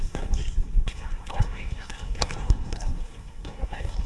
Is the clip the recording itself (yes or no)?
no